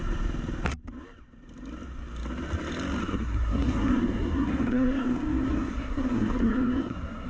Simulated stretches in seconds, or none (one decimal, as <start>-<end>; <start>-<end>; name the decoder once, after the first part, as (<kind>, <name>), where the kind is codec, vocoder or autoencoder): 3.0-7.3 (codec, SNAC)

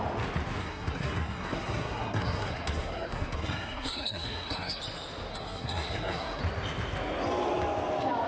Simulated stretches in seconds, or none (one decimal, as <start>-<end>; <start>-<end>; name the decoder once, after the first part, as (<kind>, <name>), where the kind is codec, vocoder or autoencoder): 0.6-4.8 (codec, SNAC); 5.3-6.4

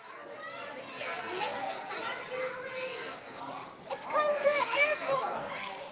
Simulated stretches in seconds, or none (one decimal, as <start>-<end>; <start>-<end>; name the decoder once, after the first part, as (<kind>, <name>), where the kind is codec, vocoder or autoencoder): 0.9-1.9 (codec, SNAC); 2.7-3.5; 4.3-5.9

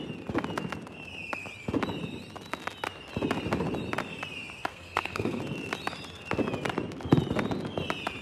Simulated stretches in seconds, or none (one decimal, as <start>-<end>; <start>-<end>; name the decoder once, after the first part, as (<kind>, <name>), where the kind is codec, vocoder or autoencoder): 4.7-5.4 (codec, SNAC)